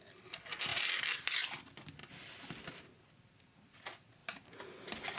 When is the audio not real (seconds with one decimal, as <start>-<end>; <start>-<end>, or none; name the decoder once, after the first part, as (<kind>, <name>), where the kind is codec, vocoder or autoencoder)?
none